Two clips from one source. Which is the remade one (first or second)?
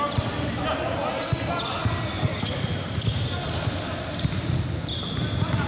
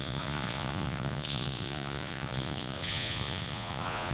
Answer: second